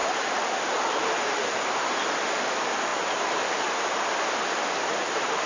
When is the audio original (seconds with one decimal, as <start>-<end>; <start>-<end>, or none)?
0.0-5.5